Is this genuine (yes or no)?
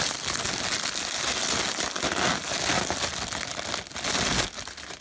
yes